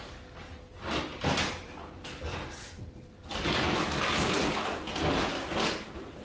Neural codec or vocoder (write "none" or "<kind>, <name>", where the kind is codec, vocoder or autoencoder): none